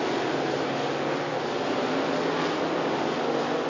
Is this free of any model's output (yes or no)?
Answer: yes